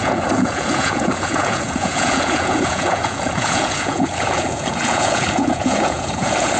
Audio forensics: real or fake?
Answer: fake